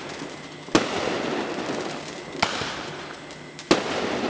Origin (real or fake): real